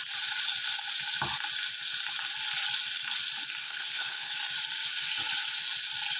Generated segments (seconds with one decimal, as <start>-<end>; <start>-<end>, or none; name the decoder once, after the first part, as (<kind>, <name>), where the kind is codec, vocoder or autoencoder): 3.6-4.3 (codec, SNAC)